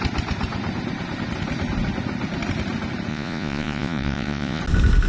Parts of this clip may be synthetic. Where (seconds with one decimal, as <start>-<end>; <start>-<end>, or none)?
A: 3.1-4.6